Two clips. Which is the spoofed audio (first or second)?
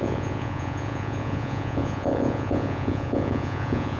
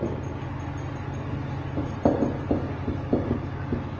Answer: first